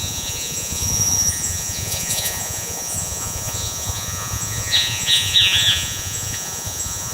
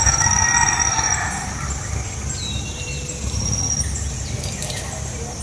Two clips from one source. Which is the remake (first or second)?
first